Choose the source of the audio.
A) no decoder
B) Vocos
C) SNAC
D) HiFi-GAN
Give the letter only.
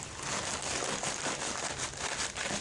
A